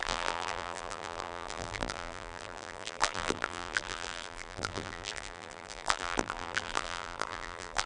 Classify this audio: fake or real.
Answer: fake